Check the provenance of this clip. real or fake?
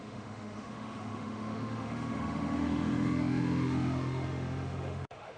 fake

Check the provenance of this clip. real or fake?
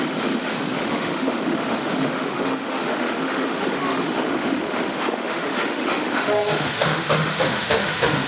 fake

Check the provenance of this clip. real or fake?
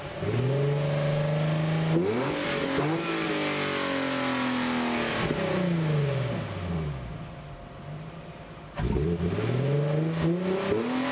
real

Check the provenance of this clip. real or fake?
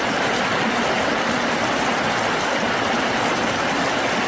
real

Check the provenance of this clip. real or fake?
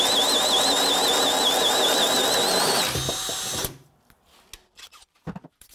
real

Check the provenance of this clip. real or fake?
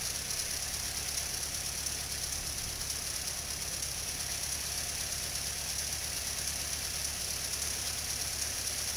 real